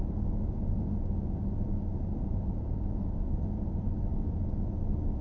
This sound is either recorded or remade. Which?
recorded